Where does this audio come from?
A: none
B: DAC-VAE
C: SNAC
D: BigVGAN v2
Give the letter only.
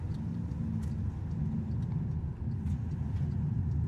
A